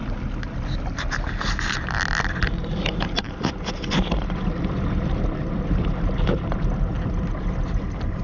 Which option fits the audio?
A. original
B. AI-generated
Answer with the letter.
A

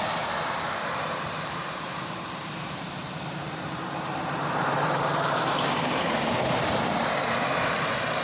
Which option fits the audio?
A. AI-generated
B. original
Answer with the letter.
A